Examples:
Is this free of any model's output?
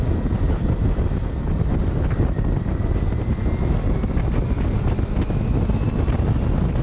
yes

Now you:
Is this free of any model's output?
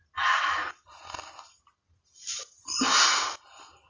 yes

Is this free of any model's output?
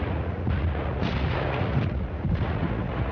no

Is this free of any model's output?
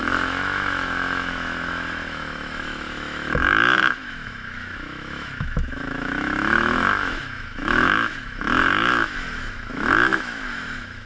no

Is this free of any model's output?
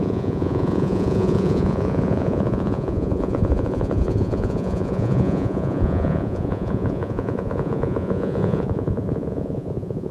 no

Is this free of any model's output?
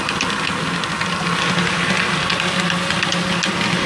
yes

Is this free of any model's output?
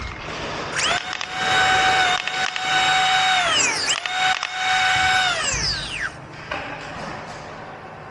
yes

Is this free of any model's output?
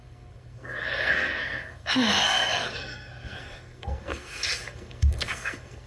no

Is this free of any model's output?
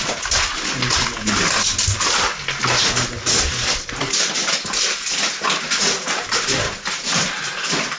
yes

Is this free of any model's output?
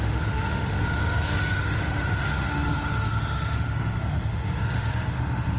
no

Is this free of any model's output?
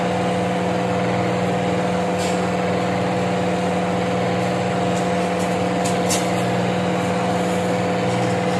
yes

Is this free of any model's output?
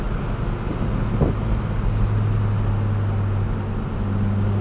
yes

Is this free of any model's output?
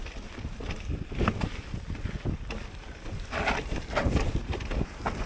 yes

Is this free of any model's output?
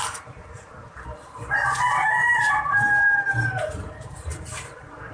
no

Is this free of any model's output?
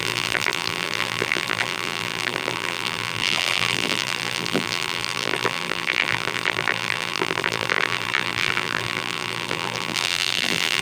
no